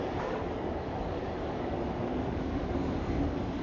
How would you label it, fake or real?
fake